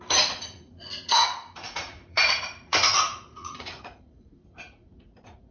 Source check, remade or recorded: remade